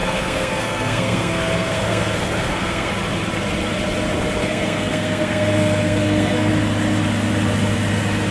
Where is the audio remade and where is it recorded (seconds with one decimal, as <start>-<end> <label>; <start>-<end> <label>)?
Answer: 0.0-2.9 remade; 2.9-4.4 recorded; 4.4-6.5 remade; 6.5-8.3 recorded